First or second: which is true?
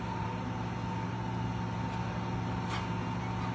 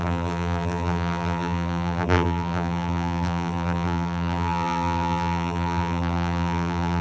first